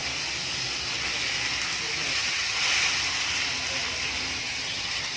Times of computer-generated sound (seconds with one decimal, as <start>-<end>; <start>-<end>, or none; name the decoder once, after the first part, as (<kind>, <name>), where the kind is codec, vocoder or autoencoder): 2.1-2.6 (vocoder, HiFi-GAN); 4.4-5.2